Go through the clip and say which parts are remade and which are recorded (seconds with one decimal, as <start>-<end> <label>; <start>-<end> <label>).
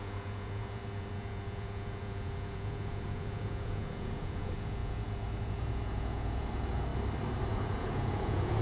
0.0-6.9 remade; 6.9-7.5 recorded; 7.5-8.6 remade